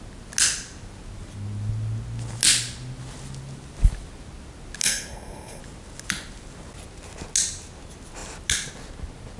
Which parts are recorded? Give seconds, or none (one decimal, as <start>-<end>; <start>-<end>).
0.0-4.8; 5.6-9.4